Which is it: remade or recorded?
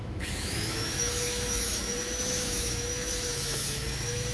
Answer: remade